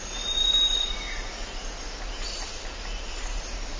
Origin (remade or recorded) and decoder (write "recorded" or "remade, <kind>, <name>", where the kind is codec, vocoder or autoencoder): recorded